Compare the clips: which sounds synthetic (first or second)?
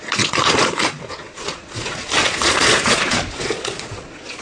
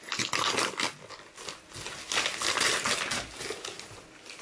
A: first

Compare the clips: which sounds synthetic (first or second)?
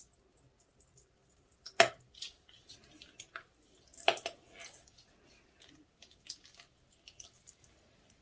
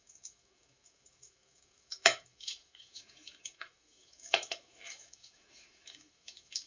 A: second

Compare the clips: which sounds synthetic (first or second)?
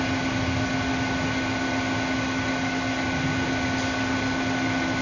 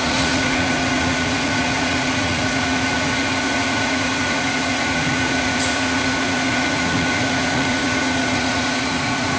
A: second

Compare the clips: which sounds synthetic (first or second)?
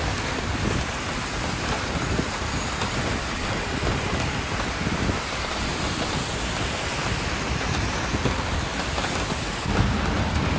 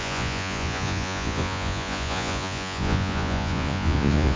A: second